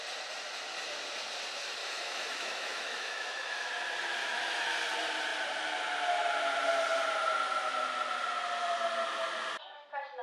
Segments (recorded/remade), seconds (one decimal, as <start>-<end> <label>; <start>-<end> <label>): 0.0-1.8 recorded; 1.8-3.7 remade; 3.7-4.2 recorded; 4.2-4.8 remade; 4.8-10.2 recorded